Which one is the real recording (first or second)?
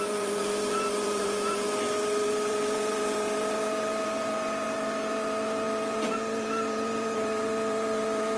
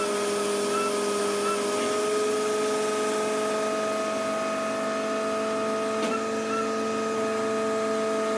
second